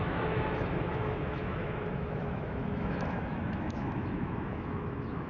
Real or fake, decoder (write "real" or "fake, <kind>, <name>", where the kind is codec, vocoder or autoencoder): fake, autoencoder, DAC-VAE